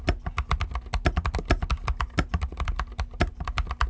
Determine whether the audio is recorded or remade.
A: recorded